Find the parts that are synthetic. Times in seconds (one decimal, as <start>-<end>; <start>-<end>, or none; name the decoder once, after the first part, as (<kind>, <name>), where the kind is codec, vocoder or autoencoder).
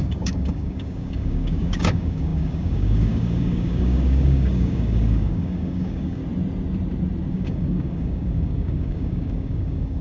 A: 0.0-6.2 (codec, DAC); 7.3-10.0